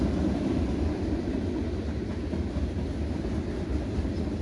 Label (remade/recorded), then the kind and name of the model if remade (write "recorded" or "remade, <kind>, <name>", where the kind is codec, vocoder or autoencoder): recorded